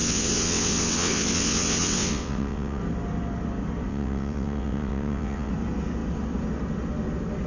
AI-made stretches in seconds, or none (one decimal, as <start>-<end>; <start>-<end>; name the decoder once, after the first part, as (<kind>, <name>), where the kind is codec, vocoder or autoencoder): 0.0-2.8 (vocoder, WaveNeXt); 3.9-5.5